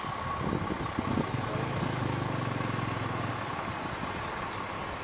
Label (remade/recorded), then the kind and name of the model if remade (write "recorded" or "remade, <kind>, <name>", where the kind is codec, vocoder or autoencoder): recorded